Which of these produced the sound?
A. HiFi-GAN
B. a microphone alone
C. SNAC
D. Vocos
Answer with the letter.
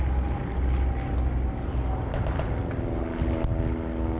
B